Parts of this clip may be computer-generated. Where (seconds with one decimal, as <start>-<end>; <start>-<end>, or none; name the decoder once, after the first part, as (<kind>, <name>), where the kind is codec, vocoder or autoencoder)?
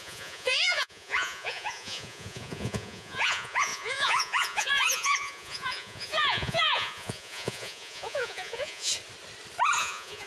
0.0-8.9 (vocoder, Vocos); 9.8-10.3